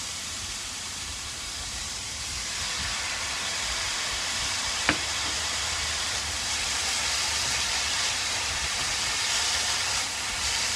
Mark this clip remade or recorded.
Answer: remade